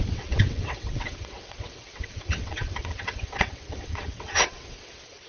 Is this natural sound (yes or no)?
no